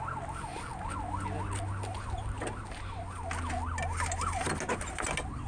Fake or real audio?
real